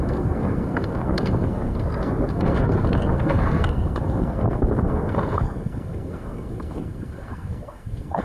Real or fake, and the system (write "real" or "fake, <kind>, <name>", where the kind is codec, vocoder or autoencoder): fake, codec, SNAC